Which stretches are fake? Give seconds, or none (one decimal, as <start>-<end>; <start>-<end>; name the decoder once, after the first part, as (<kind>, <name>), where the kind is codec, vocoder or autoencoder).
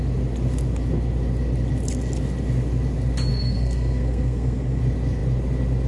3.3-4.8 (codec, SNAC)